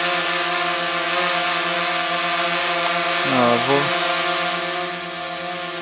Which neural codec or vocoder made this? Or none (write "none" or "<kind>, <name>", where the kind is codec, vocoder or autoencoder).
none